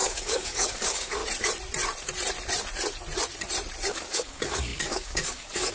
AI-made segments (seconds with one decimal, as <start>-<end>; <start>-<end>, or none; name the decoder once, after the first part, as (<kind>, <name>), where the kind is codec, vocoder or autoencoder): 0.0-1.2 (codec, DAC); 3.9-5.7